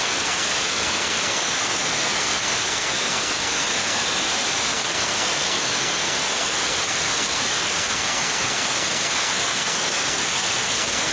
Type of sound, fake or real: fake